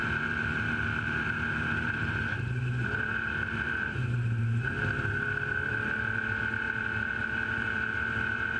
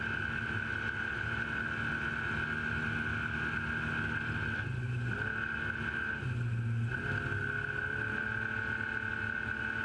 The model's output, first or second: first